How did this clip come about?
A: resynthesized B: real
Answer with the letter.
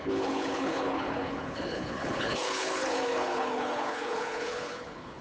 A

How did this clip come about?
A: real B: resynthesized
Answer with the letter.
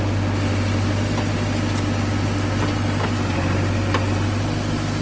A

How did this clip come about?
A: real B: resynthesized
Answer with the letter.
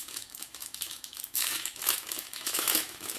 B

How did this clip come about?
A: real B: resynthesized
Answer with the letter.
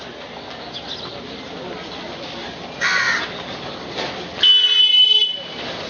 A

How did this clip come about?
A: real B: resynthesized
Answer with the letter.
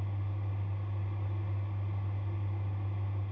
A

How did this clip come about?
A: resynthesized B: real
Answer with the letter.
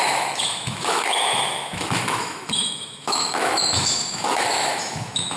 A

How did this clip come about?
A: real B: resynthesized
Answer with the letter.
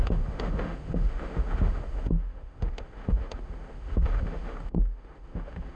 B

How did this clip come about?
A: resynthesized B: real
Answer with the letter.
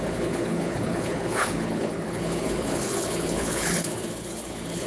A